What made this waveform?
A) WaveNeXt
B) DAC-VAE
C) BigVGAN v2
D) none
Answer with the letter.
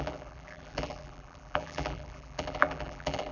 C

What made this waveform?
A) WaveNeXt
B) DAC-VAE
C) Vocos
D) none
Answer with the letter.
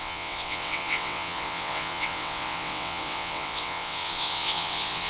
A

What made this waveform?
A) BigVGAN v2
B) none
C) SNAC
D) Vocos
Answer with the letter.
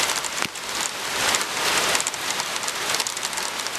B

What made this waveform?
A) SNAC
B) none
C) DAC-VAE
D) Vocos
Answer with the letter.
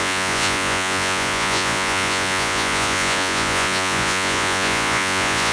D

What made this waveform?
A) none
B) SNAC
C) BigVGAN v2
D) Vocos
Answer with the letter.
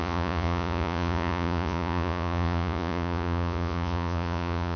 D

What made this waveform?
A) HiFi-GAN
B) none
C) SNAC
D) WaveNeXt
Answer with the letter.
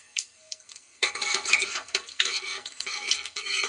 C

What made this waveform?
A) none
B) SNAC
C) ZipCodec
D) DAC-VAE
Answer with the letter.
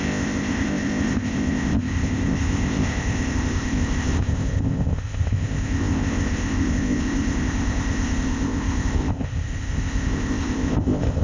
C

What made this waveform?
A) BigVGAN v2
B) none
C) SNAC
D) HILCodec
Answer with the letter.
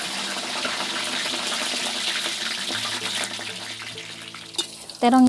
B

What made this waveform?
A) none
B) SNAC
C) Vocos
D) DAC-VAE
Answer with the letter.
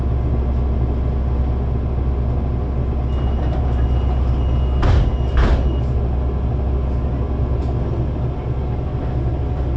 A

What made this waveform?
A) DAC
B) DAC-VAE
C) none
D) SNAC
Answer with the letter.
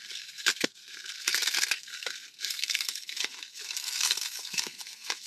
D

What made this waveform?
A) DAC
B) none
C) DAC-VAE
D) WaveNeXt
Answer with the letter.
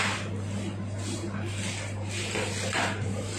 B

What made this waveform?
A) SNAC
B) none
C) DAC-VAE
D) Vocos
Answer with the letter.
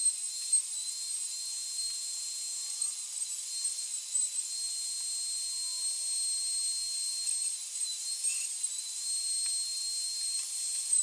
B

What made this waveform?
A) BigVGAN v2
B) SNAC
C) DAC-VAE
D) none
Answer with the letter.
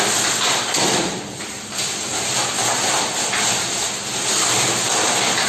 D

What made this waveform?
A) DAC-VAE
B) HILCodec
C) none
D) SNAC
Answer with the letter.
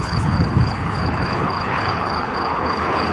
B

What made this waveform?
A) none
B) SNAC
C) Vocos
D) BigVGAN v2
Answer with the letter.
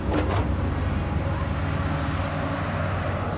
A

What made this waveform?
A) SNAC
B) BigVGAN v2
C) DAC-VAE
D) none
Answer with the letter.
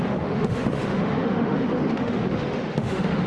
C